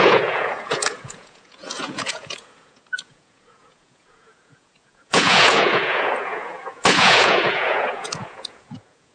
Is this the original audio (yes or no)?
no